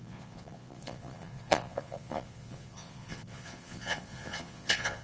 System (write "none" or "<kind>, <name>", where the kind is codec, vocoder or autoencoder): vocoder, Vocos